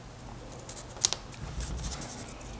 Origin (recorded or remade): recorded